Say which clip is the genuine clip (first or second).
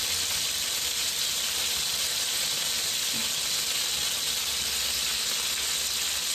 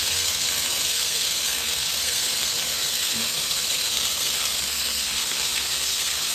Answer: first